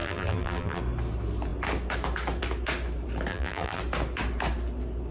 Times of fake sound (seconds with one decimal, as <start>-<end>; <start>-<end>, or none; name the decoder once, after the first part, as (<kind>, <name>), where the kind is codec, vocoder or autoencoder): 0.0-0.8 (vocoder, BigVGAN v2); 3.3-3.8